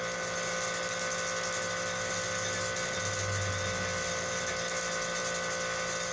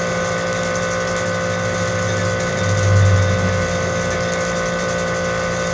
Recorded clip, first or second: first